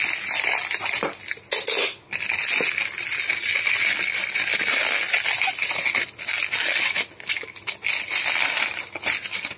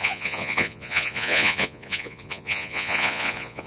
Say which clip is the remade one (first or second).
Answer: second